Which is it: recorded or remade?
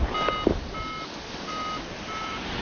recorded